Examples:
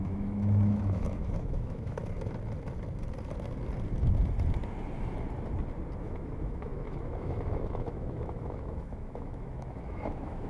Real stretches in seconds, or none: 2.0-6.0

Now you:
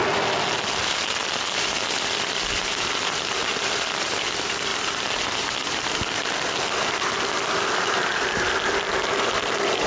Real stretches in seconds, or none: 0.0-9.9

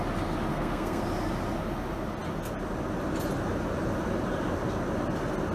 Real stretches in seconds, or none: 0.0-0.5; 1.0-5.5

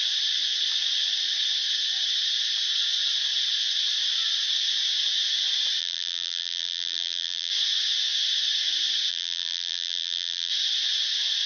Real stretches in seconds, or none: 0.0-5.8; 7.5-9.1; 10.5-11.5

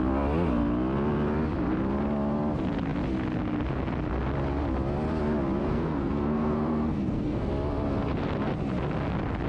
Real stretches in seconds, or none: 0.0-5.6; 7.5-9.5

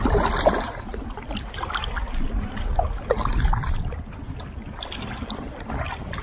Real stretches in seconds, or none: 0.0-6.2